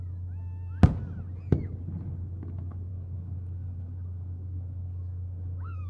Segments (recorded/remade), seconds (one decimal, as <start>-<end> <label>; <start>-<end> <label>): 0.0-2.9 recorded; 2.9-5.9 remade